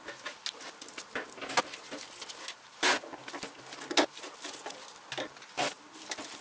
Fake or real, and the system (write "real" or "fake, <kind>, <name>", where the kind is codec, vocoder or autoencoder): real